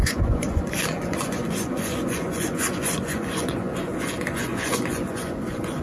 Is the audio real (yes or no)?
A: no